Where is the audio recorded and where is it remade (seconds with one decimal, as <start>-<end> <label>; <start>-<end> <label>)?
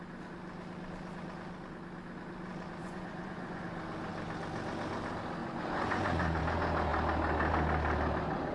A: 0.0-2.8 recorded; 2.8-3.6 remade; 3.6-5.4 recorded; 5.4-6.4 remade; 6.4-8.5 recorded